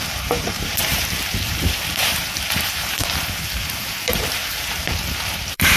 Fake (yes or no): yes